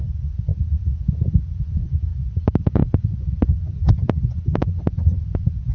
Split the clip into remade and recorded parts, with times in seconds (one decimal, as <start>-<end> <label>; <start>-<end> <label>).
0.0-2.1 remade; 2.1-2.6 recorded; 2.6-5.7 remade